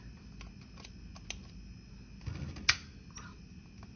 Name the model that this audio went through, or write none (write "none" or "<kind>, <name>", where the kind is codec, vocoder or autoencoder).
none